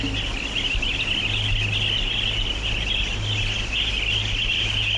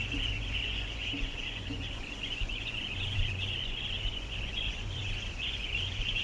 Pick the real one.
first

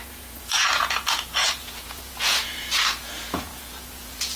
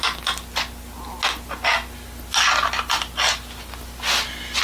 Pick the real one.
second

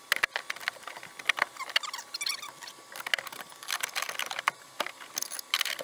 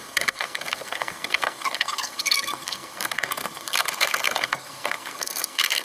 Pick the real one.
first